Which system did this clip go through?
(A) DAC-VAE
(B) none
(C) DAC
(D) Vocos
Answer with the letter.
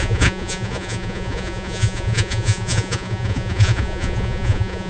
D